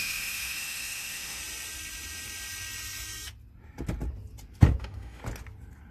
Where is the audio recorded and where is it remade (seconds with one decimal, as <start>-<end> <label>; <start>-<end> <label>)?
0.0-1.4 remade; 1.4-4.8 recorded; 4.8-5.2 remade; 5.2-5.9 recorded